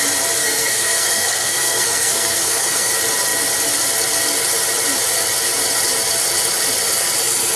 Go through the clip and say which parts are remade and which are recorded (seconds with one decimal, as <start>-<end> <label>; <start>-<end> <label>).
0.0-0.4 recorded; 0.4-2.9 remade; 2.9-7.6 recorded